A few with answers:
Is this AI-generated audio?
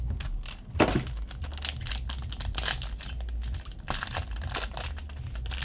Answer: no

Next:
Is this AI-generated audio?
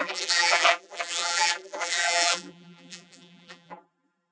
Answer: yes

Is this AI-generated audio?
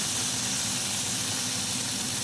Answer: no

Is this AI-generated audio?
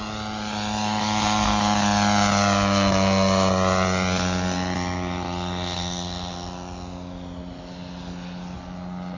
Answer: no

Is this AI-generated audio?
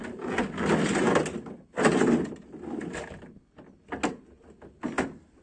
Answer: no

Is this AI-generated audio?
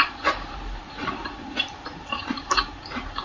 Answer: yes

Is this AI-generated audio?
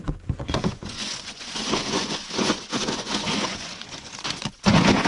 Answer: yes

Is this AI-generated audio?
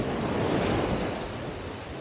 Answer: no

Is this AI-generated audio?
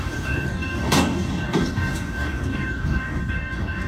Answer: yes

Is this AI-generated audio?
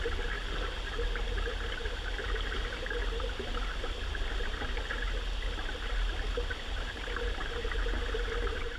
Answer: no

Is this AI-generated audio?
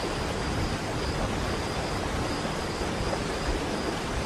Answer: no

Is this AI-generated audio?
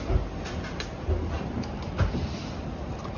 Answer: no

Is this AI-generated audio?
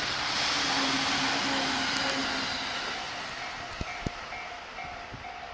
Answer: no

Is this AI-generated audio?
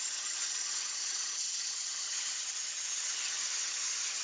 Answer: yes